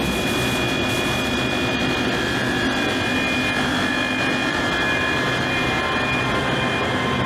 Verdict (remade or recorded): recorded